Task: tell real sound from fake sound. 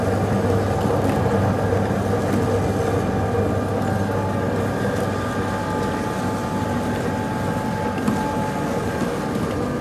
real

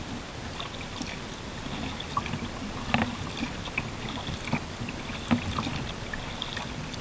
real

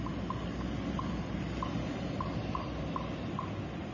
real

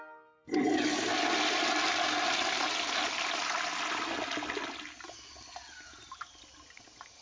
real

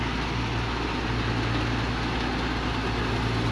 real